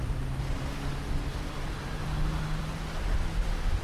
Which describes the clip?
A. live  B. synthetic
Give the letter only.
B